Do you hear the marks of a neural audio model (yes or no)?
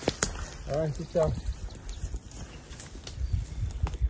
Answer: no